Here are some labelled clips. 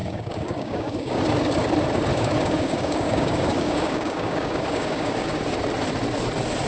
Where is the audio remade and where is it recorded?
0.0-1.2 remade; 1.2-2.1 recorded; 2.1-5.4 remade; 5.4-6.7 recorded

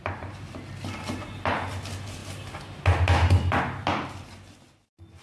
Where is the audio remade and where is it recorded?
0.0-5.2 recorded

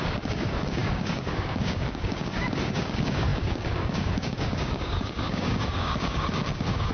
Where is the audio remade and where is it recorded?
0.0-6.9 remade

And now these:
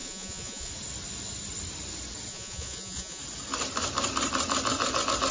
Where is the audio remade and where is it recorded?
0.0-0.7 remade; 0.7-2.3 recorded; 2.3-3.2 remade; 3.2-5.3 recorded